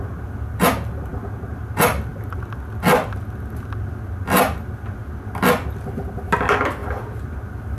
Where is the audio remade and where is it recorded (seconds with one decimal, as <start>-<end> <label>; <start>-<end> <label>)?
0.0-7.8 recorded